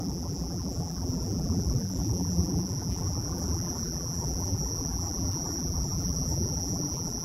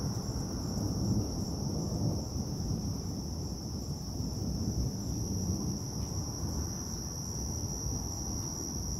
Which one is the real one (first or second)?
second